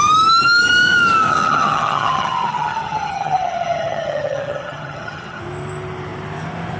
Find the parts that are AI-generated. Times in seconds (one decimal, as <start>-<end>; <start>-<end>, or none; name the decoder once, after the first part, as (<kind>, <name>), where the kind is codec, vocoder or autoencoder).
1.3-5.4 (vocoder, HiFi-GAN)